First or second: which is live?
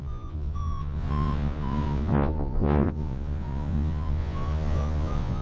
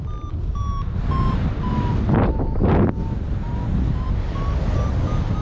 second